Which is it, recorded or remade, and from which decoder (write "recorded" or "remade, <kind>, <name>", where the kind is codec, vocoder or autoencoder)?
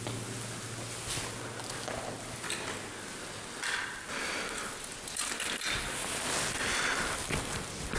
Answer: recorded